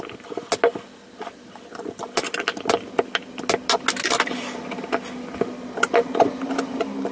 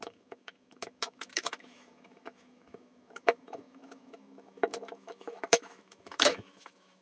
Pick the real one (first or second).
first